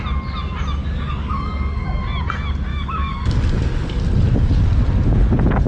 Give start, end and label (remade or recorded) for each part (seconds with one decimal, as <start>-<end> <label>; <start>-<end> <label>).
0.0-0.8 recorded; 0.8-2.0 remade; 2.0-2.7 recorded; 2.7-4.0 remade; 4.0-5.7 recorded